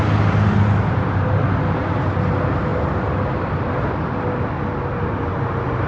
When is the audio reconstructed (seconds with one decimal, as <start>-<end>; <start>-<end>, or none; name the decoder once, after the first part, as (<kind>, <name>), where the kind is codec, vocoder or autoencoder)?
none